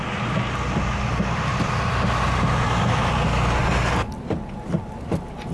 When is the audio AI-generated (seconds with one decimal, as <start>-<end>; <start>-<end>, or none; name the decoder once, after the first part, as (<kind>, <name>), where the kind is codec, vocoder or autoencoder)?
none